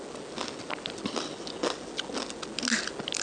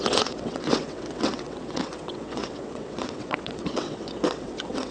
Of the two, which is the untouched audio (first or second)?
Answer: first